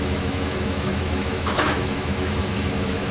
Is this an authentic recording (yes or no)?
no